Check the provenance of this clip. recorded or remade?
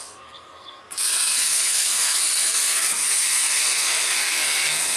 remade